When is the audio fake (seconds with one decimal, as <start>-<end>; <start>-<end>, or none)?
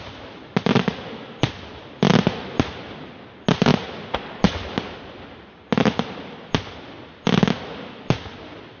none